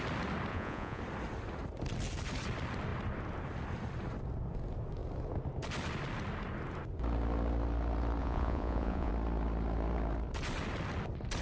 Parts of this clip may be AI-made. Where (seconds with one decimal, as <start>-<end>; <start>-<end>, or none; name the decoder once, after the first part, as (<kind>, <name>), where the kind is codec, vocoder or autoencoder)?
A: 0.5-1.0 (vocoder, Vocos); 8.2-9.1